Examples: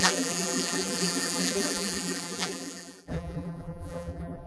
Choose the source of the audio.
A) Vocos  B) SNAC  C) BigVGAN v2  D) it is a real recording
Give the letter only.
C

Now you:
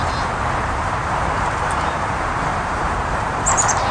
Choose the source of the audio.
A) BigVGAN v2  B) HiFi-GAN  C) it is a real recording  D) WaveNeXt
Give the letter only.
A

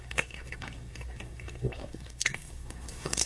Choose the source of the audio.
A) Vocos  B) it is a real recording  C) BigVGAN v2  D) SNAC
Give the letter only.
D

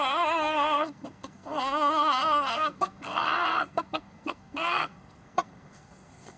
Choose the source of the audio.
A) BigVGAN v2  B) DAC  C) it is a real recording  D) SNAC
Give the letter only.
D